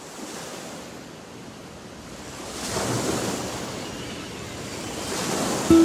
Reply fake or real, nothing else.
real